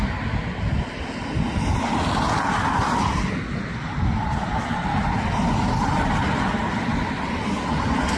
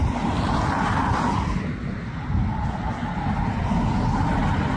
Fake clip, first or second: first